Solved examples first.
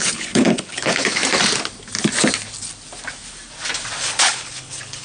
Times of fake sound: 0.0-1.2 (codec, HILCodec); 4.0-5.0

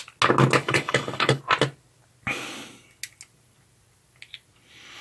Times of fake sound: 0.6-1.4 (codec, HILCodec)

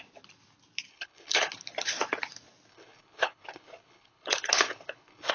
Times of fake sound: 0.9-1.5 (codec, HILCodec); 2.7-5.3

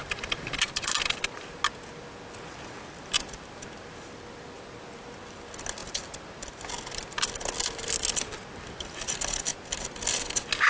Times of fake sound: none

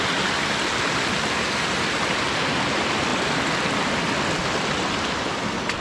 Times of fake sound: none